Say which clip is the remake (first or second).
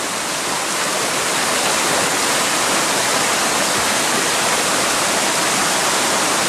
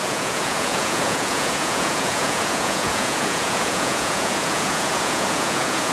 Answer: second